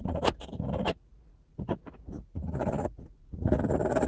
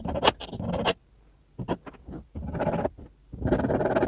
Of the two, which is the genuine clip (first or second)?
second